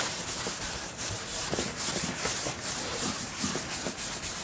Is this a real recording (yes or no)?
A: no